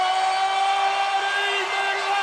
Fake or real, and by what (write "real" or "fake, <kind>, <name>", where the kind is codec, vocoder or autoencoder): real